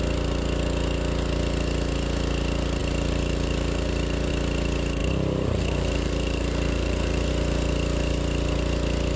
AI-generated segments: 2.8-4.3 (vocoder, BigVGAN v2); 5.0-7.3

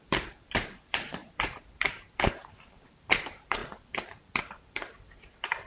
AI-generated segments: 0.0-3.6 (vocoder, BigVGAN v2); 4.4-5.7

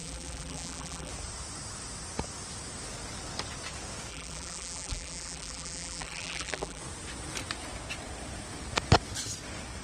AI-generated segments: 0.0-1.1 (vocoder, BigVGAN v2); 4.1-6.8

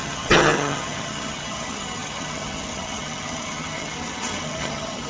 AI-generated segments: 0.0-5.1 (vocoder, HiFi-GAN)

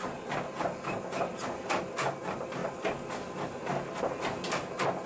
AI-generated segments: none

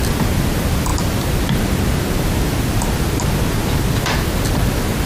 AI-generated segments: none

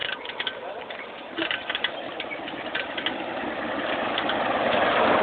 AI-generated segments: 0.0-3.1 (vocoder, BigVGAN v2)